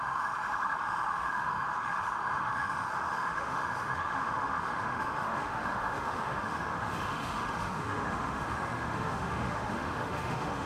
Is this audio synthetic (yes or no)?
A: yes